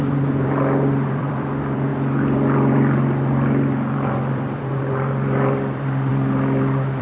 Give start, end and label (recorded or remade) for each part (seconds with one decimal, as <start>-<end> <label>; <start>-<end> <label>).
0.0-7.0 remade